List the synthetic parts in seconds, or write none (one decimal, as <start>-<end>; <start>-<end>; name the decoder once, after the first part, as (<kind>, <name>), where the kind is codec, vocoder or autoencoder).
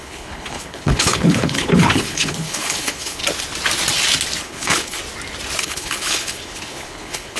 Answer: 0.0-3.2 (codec, HILCodec); 4.4-5.0; 5.6-7.4